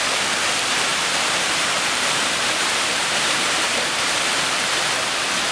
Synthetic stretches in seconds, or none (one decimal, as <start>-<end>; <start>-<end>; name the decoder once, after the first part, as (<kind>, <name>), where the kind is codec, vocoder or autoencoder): 0.9-4.2 (vocoder, BigVGAN v2)